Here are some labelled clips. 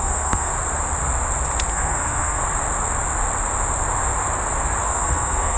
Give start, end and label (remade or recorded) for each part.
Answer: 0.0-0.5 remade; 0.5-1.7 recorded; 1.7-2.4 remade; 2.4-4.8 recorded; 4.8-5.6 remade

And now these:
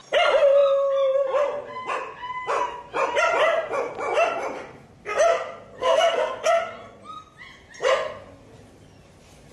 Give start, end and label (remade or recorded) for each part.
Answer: 0.0-5.8 recorded; 5.8-6.6 remade; 6.6-9.5 recorded

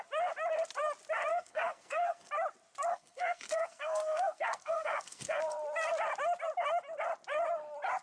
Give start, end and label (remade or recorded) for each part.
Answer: 0.0-1.3 recorded; 1.3-2.3 remade; 2.3-2.9 recorded; 2.9-5.4 remade; 5.4-8.0 recorded

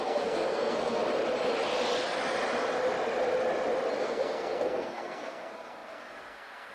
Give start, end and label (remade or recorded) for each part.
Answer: 0.0-1.0 remade; 1.0-4.0 recorded; 4.0-6.7 remade

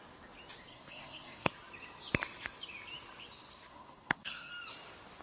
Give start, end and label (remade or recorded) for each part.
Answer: 0.0-0.7 recorded; 0.7-1.5 remade; 1.5-3.7 recorded; 3.7-4.5 remade; 4.5-5.2 recorded

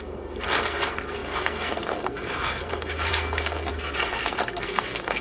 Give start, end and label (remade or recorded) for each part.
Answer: 0.0-5.2 remade

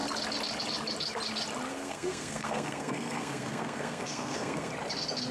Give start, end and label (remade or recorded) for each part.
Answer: 0.0-1.7 recorded; 1.7-4.7 remade; 4.7-5.3 recorded